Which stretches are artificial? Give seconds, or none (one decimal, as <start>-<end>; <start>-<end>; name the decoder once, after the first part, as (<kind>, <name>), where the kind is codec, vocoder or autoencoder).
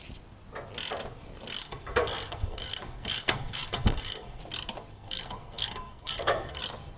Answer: 1.6-4.4 (codec, SNAC); 4.9-6.6